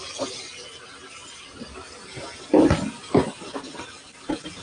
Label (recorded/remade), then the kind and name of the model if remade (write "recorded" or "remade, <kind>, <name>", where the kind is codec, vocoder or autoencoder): recorded